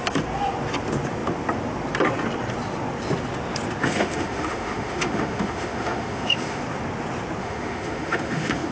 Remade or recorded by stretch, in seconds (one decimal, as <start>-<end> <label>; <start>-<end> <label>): 0.0-3.8 recorded; 3.8-6.6 remade; 6.6-7.4 recorded; 7.4-8.7 remade